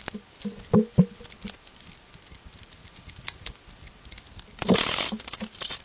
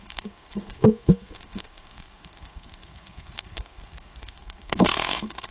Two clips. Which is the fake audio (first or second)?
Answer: second